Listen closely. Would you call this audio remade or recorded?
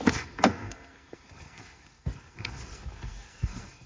remade